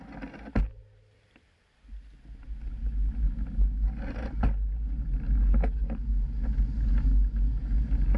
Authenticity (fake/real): real